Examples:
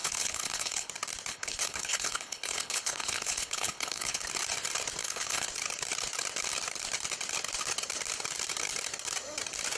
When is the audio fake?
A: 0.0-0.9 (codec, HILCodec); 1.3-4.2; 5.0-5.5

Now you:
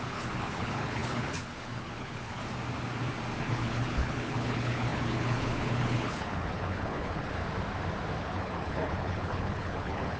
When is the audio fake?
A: 0.0-2.4 (codec, HILCodec); 3.4-7.4; 8.2-10.2